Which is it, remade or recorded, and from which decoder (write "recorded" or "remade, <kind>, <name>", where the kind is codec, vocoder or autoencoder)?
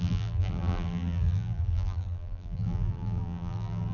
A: remade, vocoder, BigVGAN v2